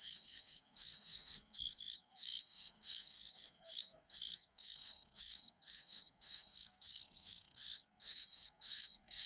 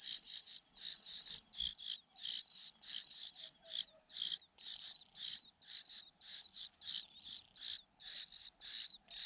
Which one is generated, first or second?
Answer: first